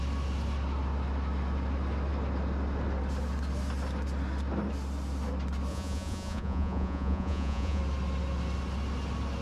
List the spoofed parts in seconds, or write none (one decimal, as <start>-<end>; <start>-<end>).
5.7-7.8